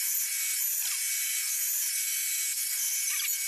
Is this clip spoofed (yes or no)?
no